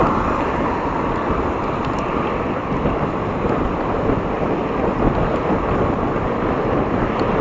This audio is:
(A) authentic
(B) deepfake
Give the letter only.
A